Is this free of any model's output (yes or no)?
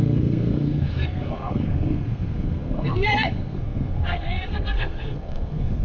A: no